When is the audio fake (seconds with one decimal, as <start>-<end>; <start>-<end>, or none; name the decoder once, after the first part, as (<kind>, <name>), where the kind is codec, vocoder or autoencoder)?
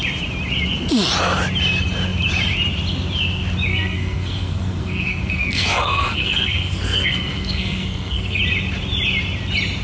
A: 3.7-8.4 (codec, SNAC)